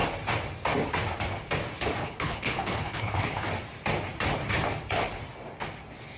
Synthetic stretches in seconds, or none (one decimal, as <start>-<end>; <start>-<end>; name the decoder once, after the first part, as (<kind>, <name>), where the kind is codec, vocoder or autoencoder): 2.0-3.5 (codec, HILCodec)